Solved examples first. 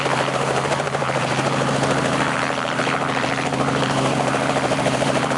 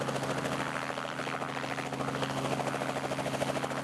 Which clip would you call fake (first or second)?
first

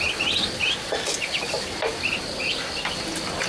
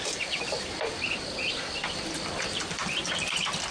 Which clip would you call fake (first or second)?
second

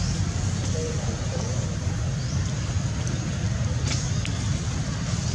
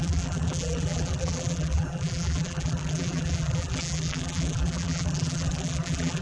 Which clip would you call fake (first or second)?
second